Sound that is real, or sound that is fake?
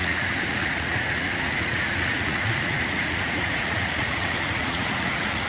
fake